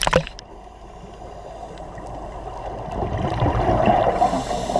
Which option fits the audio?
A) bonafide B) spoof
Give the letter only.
A